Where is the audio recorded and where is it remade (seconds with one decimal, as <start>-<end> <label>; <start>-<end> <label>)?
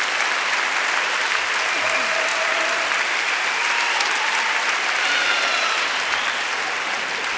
0.0-7.4 recorded